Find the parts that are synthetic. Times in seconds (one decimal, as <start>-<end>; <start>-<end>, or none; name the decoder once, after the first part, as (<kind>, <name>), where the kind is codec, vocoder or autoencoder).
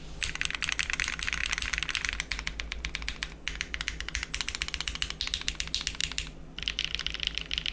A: none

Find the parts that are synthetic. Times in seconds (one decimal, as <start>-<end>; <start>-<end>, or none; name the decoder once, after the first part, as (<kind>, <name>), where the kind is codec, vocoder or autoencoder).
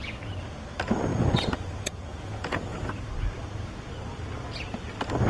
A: 1.1-2.9 (vocoder, Vocos)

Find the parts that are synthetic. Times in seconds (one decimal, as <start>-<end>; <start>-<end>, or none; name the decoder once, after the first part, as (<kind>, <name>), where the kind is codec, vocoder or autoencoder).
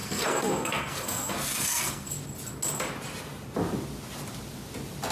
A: 0.0-2.1 (codec, SNAC)